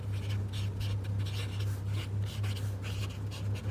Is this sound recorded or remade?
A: recorded